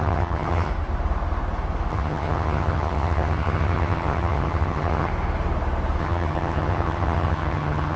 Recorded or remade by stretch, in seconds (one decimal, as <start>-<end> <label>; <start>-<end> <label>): 0.0-0.7 remade; 0.7-1.9 recorded; 1.9-5.1 remade; 5.1-6.0 recorded; 6.0-8.0 remade